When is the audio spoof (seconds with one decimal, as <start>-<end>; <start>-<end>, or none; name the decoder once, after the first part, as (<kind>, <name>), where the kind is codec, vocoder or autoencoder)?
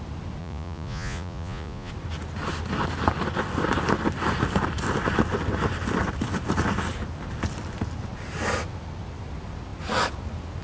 0.4-1.9 (vocoder, Vocos)